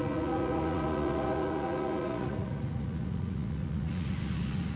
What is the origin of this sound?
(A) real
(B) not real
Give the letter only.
B